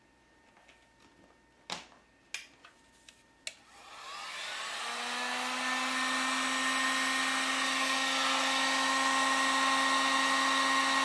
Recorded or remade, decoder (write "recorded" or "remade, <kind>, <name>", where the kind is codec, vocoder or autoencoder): recorded